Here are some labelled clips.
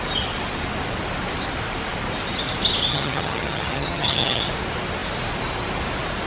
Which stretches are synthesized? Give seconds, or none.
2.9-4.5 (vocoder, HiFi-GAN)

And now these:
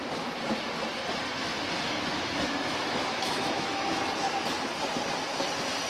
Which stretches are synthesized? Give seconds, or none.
1.4-4.0 (autoencoder, DAC-VAE)

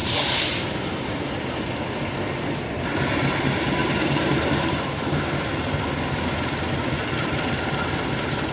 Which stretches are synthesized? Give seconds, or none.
0.0-1.7 (vocoder, BigVGAN v2); 3.8-5.8

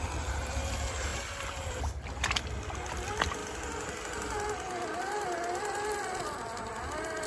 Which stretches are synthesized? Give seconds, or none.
none

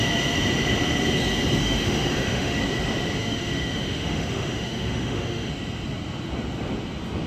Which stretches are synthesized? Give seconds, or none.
1.6-2.6 (autoencoder, DAC-VAE); 3.2-5.5

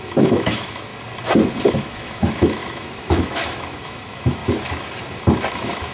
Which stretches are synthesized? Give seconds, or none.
0.0-0.9 (autoencoder, DAC-VAE); 1.7-4.4; 5.5-5.9

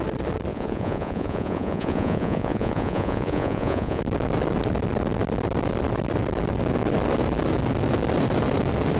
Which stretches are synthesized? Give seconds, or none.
0.5-4.0 (vocoder, Vocos)